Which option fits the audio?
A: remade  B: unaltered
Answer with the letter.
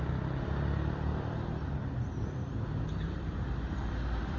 A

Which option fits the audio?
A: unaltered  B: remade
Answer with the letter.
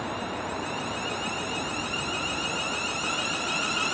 B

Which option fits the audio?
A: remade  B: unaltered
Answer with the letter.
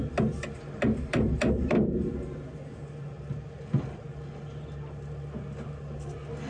B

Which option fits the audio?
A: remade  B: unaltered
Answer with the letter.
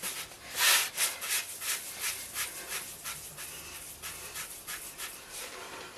A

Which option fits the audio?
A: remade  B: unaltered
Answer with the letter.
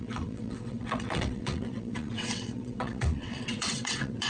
A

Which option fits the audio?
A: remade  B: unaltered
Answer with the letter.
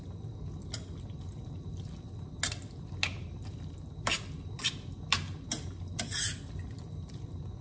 B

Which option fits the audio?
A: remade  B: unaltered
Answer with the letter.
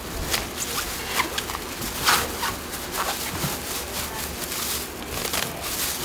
B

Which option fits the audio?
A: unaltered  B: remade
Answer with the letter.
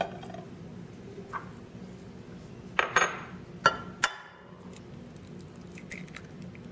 A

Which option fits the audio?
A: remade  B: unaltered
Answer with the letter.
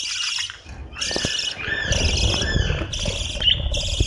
B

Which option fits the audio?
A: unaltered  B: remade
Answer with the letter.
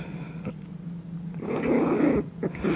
A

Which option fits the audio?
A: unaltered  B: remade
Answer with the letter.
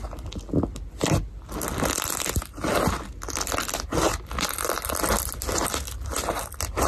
A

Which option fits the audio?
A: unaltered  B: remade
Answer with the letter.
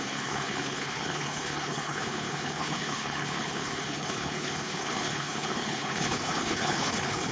B